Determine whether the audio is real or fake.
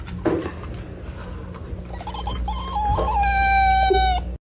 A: real